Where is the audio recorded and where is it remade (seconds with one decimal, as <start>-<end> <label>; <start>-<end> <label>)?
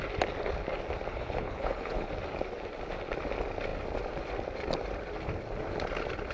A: 0.0-1.1 recorded; 1.1-2.1 remade; 2.1-6.3 recorded